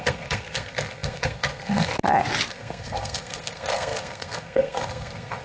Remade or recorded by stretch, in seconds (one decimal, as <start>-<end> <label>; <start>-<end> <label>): 0.0-1.9 remade; 1.9-2.5 recorded; 2.5-5.4 remade